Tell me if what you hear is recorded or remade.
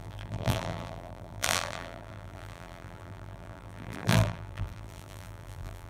remade